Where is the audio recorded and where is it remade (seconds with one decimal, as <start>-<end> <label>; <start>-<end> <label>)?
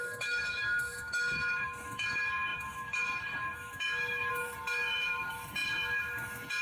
0.0-6.6 remade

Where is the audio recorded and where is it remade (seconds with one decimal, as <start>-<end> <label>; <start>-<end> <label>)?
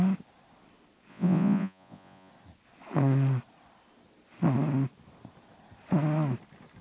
0.0-1.1 recorded; 1.1-2.3 remade; 2.3-6.8 recorded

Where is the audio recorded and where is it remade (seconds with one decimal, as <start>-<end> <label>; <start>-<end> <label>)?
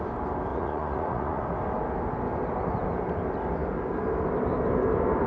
0.0-0.5 recorded; 0.5-1.4 remade; 1.4-5.3 recorded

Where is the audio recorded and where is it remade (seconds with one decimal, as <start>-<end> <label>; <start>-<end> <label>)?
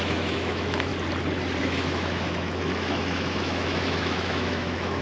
0.0-0.9 remade; 0.9-1.6 recorded; 1.6-5.0 remade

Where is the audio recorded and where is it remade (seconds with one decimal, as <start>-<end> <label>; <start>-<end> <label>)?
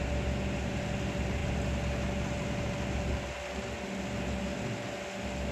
0.0-5.5 recorded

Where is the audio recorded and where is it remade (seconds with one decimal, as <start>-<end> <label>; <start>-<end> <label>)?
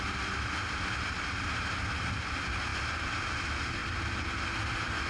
0.0-5.1 recorded